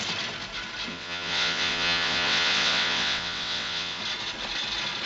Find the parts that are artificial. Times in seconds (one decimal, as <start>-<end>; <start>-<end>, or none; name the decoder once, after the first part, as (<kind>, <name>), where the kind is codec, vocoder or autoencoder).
0.9-4.0 (vocoder, WaveNeXt)